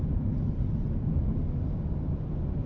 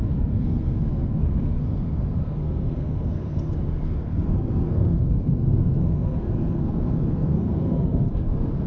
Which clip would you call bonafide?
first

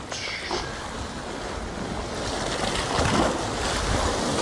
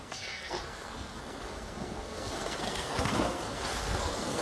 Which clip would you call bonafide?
first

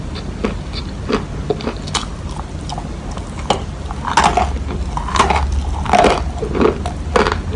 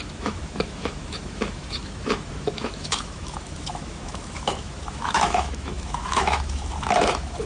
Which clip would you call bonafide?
first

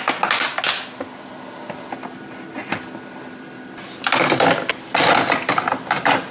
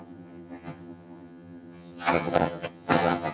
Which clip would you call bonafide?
first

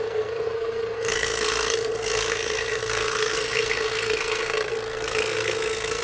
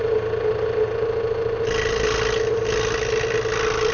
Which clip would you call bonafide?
second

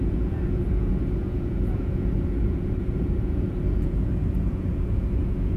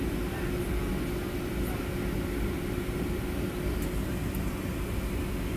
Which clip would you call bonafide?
second